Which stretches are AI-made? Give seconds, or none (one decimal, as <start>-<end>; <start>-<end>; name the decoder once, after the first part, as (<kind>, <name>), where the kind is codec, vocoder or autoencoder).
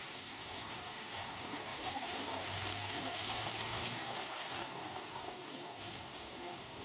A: 0.0-6.8 (codec, DAC)